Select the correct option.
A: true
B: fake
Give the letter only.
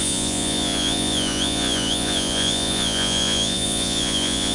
B